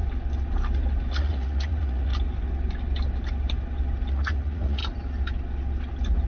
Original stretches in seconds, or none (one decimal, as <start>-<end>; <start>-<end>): 0.0-1.1; 2.1-4.1; 4.8-6.3